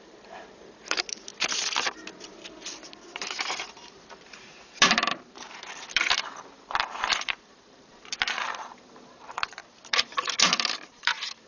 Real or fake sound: fake